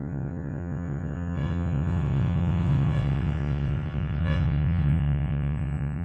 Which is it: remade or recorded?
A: remade